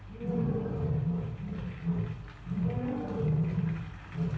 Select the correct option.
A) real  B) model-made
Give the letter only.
A